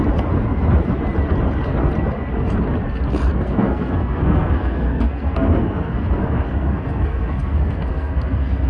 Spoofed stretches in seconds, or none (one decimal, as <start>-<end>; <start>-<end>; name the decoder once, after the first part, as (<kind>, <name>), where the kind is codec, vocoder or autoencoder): 3.3-8.7 (codec, SNAC)